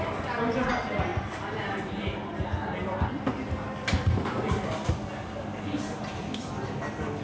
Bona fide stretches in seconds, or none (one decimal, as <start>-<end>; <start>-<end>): 0.0-7.2